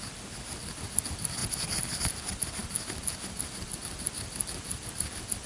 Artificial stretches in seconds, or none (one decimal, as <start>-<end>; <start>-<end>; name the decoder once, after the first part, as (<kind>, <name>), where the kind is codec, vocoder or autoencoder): none